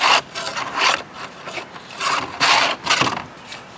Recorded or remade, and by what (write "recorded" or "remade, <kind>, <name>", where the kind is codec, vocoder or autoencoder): recorded